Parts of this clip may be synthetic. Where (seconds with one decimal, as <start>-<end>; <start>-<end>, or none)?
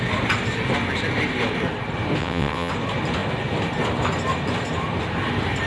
2.2-2.7